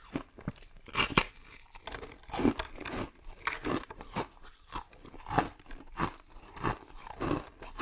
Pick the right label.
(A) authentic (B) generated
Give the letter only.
A